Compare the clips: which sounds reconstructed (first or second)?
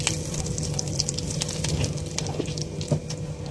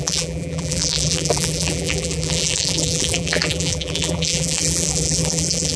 second